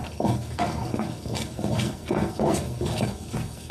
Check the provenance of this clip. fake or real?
fake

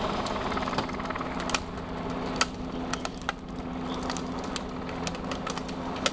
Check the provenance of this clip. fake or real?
real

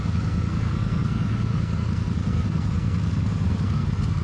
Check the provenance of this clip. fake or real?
fake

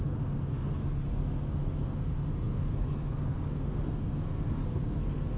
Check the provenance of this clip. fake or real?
fake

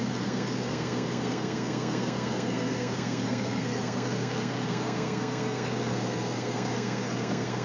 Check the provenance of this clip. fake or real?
fake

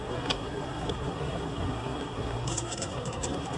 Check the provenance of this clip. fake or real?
fake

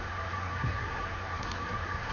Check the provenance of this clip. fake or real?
fake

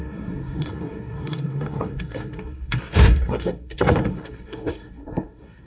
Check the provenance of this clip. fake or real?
fake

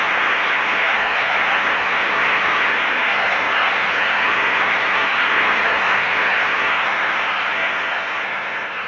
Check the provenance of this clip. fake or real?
fake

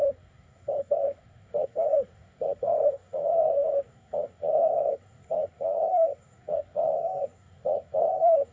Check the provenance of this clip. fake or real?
fake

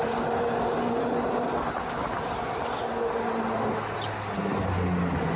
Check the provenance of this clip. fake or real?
real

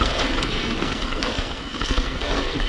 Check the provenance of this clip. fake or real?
fake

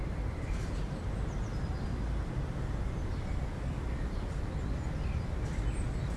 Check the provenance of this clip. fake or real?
real